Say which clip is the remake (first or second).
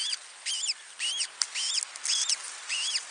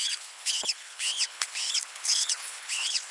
second